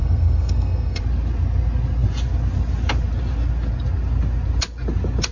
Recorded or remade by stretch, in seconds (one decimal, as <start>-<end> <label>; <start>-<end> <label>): 0.0-1.0 remade; 1.0-5.3 recorded